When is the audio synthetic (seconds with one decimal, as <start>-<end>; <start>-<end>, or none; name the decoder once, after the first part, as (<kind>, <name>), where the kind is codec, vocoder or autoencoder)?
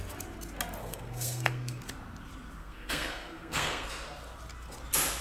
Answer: 0.8-1.8 (codec, SNAC); 2.6-3.9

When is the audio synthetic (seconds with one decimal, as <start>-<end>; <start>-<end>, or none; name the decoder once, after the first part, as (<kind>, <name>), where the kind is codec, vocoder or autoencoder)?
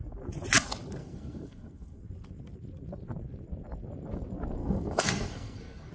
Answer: 1.0-2.0 (codec, SNAC); 4.6-5.9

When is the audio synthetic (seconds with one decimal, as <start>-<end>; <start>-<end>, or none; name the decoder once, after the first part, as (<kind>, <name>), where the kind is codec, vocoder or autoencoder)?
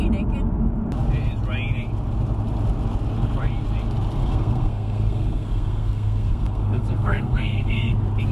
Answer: 4.2-7.9 (codec, SNAC)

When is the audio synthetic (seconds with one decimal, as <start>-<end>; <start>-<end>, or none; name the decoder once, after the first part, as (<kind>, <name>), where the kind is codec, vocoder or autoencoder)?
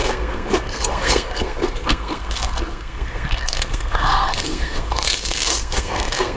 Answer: 0.0-6.4 (codec, SNAC)